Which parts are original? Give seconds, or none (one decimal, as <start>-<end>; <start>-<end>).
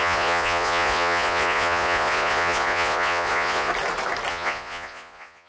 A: 3.7-4.3